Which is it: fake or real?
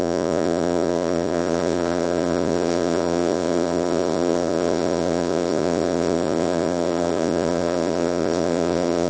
fake